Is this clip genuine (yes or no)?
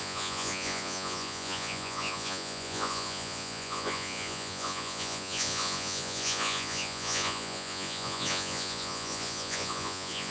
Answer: no